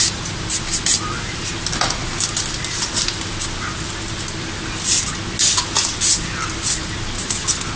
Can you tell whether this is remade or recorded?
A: recorded